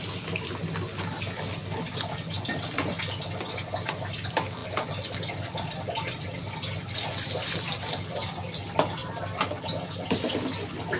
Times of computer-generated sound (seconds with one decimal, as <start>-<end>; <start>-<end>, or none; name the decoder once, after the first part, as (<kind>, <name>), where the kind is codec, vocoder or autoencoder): none